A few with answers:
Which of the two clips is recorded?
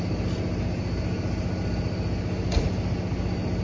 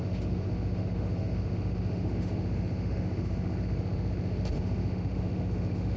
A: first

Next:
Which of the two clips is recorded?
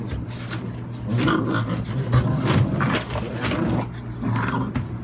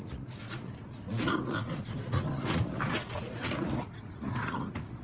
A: first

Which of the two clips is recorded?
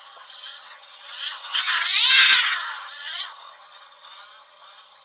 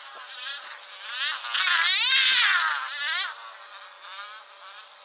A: second